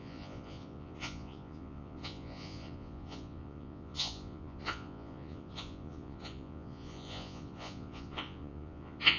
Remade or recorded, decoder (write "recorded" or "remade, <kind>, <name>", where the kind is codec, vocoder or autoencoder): remade, vocoder, Vocos